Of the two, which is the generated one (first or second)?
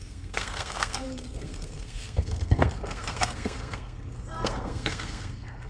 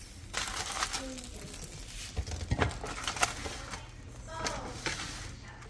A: first